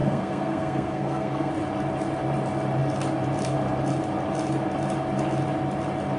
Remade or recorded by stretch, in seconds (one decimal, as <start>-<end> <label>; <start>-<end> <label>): 0.0-1.5 remade; 1.5-6.2 recorded